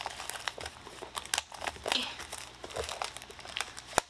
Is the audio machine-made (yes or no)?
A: no